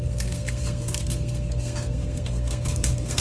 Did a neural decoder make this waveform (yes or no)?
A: yes